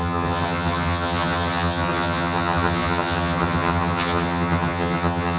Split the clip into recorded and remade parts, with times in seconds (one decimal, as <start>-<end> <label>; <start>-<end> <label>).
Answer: 0.0-5.4 remade